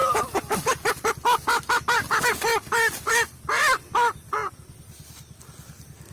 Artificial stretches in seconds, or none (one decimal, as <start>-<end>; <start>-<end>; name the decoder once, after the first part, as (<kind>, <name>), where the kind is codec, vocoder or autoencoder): none